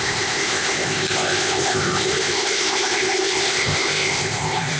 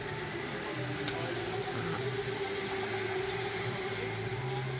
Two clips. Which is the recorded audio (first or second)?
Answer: second